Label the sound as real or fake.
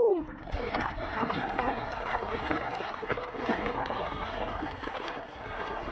fake